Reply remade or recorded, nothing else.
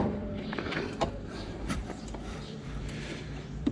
remade